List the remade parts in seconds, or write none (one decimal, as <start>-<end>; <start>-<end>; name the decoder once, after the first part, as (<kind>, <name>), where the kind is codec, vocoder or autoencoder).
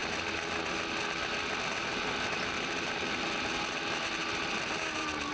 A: none